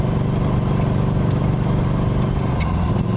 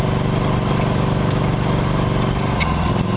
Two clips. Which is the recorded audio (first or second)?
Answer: second